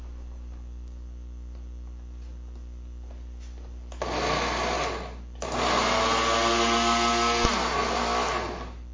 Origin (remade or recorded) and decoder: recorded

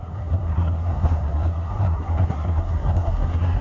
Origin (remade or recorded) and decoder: remade, codec, SNAC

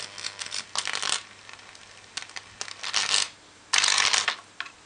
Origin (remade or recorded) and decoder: recorded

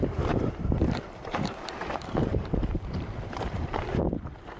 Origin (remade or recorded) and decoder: remade, vocoder, BigVGAN v2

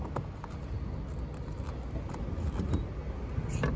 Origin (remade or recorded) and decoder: recorded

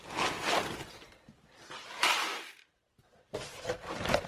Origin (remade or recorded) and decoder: recorded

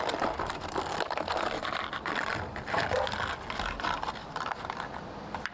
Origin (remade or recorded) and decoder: recorded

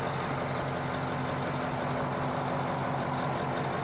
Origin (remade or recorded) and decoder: recorded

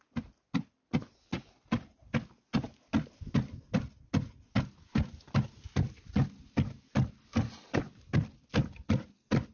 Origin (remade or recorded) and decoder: recorded